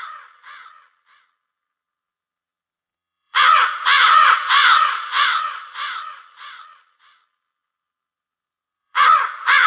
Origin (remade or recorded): remade